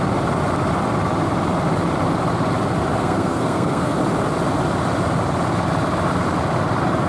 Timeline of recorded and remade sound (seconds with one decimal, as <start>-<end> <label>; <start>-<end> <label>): 0.0-3.0 recorded; 3.0-4.0 remade; 4.0-7.1 recorded